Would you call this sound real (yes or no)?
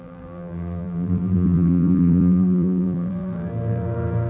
no